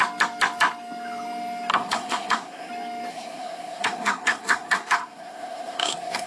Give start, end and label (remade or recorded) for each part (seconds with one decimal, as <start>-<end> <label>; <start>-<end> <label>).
0.0-1.7 recorded; 1.7-2.7 remade; 2.7-3.1 recorded; 3.1-6.3 remade